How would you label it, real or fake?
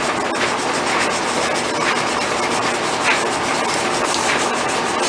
real